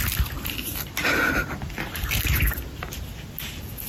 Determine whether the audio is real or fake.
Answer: real